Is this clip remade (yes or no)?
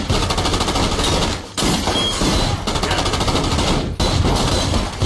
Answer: no